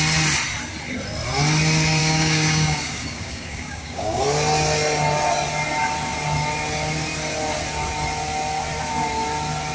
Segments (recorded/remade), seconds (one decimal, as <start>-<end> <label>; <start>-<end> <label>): 0.0-2.0 recorded; 2.0-4.2 remade; 4.2-9.7 recorded